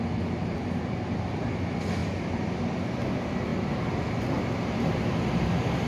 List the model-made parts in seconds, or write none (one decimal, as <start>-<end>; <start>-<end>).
none